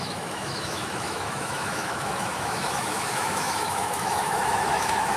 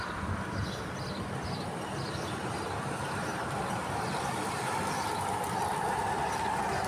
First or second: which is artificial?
first